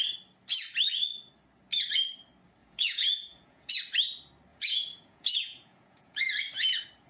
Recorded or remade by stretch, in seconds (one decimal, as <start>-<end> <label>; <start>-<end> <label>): 0.0-2.6 recorded; 2.6-3.7 remade; 3.7-4.5 recorded; 4.5-6.2 remade; 6.2-7.1 recorded